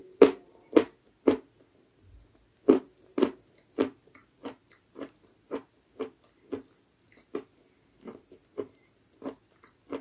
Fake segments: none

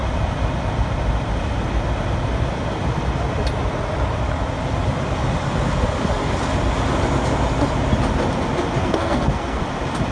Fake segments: 8.8-9.6 (codec, SNAC)

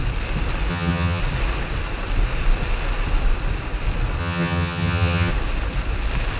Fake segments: 0.7-1.2 (vocoder, HiFi-GAN); 4.2-5.3

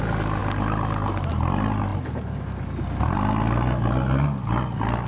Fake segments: none